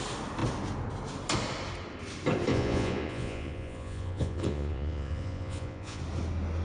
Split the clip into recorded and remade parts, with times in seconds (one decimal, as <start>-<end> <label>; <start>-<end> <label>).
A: 0.0-2.5 recorded; 2.5-6.0 remade; 6.0-6.6 recorded